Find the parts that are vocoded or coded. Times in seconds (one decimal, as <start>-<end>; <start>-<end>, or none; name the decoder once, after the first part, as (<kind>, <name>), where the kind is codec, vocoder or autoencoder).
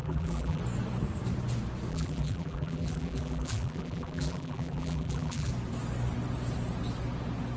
0.0-0.6 (vocoder, BigVGAN v2); 1.9-5.5